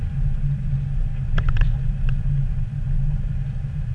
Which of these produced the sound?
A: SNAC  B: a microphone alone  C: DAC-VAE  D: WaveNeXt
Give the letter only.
B